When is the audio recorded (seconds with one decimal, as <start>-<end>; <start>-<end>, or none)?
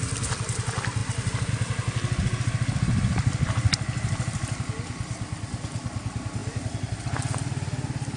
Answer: 0.0-1.0; 1.5-6.4; 7.0-8.2